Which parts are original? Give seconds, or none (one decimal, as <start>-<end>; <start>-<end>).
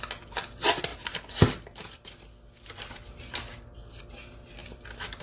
0.0-4.6